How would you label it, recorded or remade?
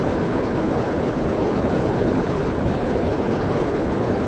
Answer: remade